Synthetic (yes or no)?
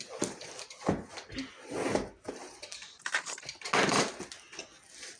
no